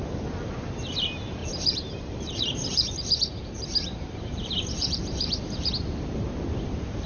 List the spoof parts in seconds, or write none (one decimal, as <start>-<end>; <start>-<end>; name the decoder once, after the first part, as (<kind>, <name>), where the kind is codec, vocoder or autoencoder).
1.4-5.7 (vocoder, BigVGAN v2)